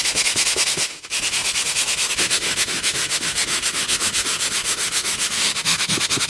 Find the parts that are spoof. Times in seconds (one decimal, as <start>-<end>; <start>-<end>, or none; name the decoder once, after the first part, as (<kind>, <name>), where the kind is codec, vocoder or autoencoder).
0.0-6.3 (autoencoder, DAC-VAE)

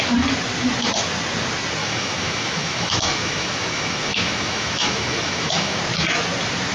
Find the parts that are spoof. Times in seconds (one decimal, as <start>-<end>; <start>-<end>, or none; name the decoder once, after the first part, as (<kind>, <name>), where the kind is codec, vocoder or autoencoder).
1.8-5.8 (autoencoder, DAC-VAE)

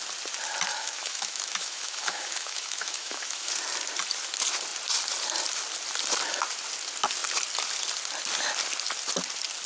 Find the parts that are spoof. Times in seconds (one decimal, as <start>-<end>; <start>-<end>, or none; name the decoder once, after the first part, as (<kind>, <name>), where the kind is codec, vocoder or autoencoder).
0.7-3.5 (autoencoder, DAC-VAE)